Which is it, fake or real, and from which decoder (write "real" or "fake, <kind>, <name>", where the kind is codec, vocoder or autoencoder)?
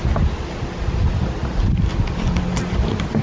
real